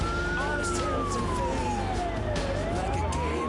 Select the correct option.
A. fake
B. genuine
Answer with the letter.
B